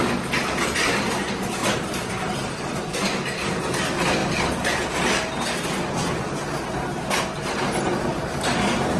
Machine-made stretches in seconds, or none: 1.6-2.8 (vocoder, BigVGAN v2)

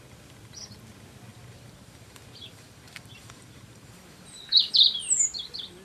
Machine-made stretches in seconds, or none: 1.3-4.7 (vocoder, BigVGAN v2)